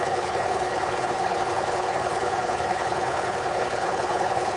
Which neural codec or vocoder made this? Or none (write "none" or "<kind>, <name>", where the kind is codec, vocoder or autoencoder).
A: codec, HILCodec